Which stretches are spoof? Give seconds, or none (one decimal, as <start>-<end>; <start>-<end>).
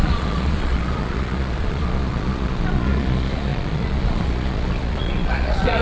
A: 0.0-5.8